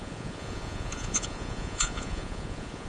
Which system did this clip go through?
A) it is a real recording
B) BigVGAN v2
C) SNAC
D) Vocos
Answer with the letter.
D